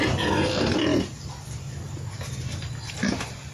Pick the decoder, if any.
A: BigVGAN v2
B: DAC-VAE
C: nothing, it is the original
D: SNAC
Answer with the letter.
C